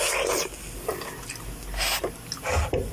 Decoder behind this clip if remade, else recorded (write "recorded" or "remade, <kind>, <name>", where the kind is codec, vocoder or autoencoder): recorded